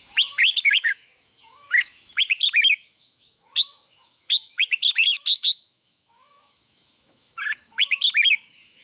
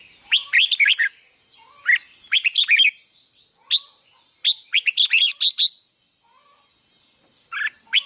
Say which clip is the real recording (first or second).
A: second